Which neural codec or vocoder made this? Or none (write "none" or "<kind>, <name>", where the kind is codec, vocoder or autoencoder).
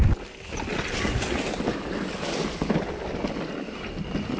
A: none